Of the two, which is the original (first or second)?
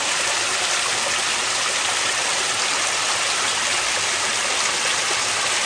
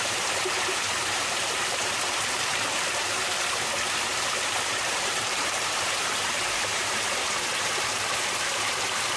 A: first